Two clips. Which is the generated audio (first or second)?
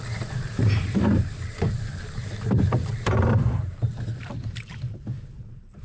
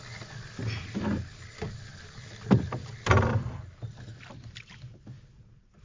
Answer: first